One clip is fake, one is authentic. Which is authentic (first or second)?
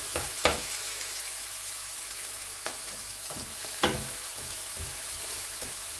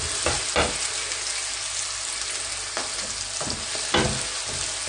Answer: second